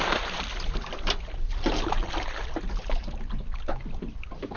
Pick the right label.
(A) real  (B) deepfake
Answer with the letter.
A